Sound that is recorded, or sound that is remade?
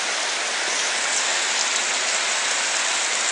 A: recorded